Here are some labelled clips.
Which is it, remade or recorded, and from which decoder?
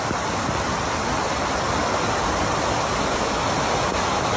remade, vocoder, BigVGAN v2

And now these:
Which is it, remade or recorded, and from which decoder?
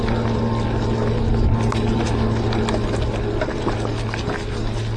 recorded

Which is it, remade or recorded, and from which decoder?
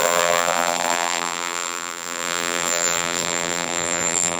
remade, vocoder, BigVGAN v2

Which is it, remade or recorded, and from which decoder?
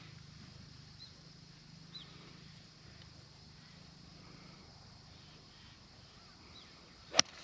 remade, vocoder, BigVGAN v2